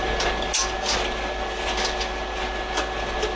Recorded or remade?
recorded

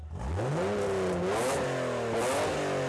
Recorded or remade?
recorded